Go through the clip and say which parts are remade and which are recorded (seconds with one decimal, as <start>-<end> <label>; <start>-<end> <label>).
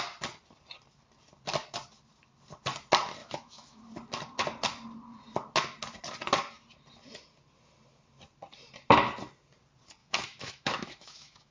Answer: 0.0-3.2 recorded; 3.2-3.8 remade; 3.8-10.0 recorded; 10.0-11.5 remade